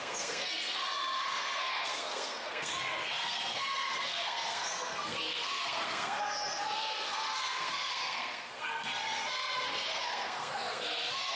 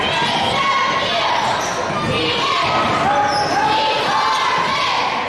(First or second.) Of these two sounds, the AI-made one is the first